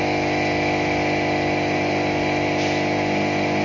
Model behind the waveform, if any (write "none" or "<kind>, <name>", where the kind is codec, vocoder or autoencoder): none